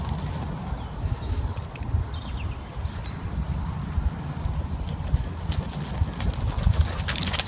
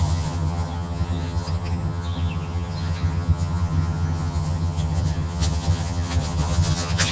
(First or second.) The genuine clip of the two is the first